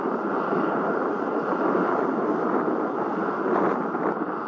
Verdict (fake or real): real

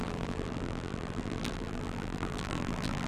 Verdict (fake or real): fake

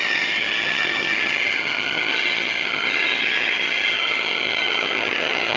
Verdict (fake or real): fake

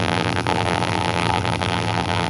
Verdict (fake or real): fake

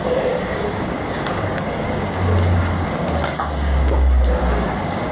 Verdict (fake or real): fake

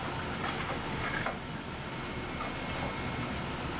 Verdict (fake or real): real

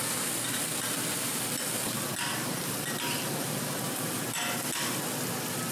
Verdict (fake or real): real